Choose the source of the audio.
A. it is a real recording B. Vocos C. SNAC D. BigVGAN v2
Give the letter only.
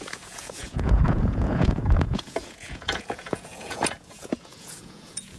B